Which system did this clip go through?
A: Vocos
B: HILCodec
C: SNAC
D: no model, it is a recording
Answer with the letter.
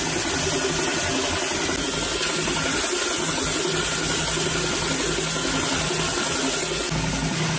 D